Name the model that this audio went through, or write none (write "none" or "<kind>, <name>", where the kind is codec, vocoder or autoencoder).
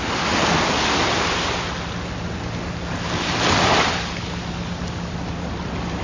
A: none